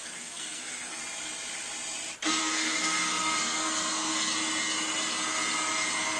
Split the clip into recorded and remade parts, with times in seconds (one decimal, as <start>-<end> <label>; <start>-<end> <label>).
0.0-1.0 remade; 1.0-2.4 recorded; 2.4-4.1 remade; 4.1-6.2 recorded